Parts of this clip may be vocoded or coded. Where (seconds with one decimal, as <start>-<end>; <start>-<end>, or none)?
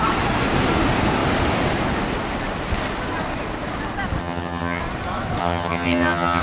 4.2-4.8; 5.4-6.4